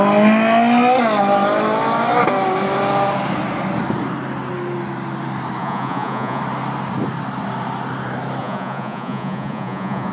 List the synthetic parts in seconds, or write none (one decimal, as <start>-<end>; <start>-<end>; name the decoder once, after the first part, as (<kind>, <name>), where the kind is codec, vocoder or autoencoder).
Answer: 5.6-6.4 (vocoder, Vocos); 8.4-10.1